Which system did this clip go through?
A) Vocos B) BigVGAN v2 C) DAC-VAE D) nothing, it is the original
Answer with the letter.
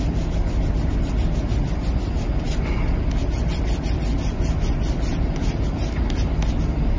D